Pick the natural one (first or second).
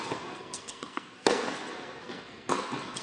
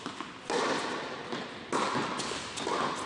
second